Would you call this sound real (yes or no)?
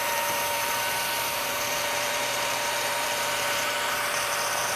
no